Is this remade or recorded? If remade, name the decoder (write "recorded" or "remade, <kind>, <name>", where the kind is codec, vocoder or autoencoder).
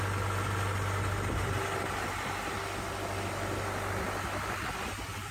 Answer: recorded